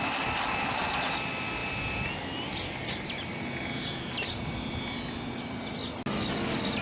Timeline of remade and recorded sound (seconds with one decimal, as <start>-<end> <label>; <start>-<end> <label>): 0.0-6.8 recorded